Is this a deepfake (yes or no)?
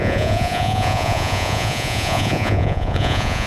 yes